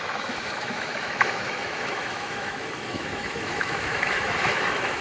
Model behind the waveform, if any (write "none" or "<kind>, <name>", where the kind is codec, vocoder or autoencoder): autoencoder, DAC-VAE